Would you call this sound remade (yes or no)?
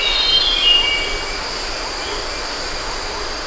no